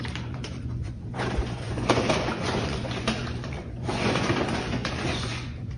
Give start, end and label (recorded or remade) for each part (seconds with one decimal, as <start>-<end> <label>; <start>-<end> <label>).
0.0-5.8 remade